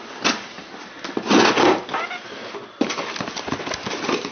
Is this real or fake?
real